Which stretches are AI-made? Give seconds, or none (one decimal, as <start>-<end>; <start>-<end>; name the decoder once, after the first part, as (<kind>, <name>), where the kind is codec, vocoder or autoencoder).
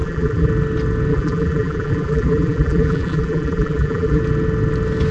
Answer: 0.0-0.5 (vocoder, BigVGAN v2); 1.1-4.2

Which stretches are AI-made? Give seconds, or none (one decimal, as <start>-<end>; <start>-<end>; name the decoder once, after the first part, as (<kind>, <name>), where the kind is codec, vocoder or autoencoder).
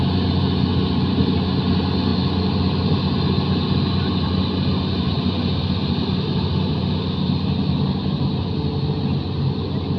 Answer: none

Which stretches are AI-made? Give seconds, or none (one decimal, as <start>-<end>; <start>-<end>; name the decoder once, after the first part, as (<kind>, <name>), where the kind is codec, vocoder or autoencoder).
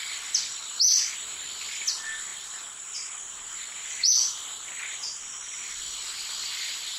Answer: none